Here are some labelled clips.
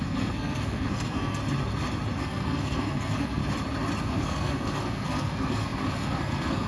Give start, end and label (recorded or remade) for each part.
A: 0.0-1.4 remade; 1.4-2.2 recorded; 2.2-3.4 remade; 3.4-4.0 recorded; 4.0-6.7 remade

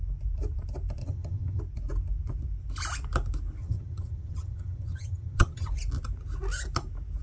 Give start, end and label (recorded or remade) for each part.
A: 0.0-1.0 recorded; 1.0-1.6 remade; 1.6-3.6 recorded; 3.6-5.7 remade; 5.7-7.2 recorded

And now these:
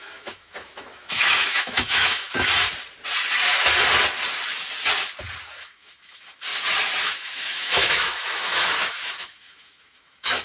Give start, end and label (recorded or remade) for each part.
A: 0.0-2.5 remade; 2.5-5.5 recorded; 5.5-6.5 remade; 6.5-7.0 recorded; 7.0-10.4 remade

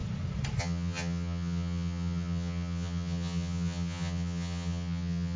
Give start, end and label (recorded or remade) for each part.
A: 0.0-0.6 recorded; 0.6-5.4 remade